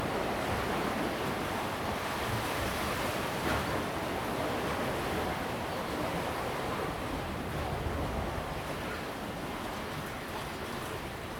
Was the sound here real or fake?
real